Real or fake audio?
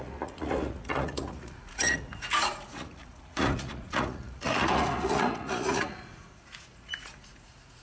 fake